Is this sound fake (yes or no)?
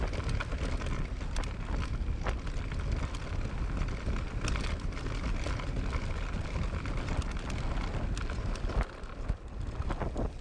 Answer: no